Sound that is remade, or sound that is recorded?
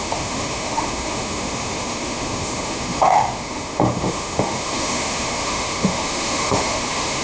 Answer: remade